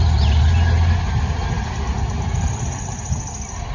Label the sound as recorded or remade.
recorded